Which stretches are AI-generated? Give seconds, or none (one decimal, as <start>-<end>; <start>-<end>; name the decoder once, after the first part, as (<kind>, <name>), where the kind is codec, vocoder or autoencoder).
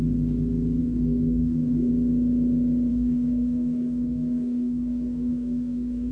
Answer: 0.8-1.9 (codec, DAC); 2.9-6.1